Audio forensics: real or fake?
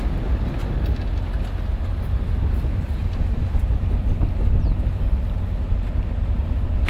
real